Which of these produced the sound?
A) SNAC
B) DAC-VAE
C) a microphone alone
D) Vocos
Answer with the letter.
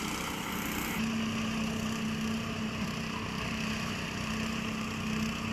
C